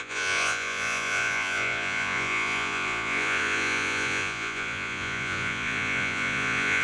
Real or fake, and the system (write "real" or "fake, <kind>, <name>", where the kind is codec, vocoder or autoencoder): fake, vocoder, Vocos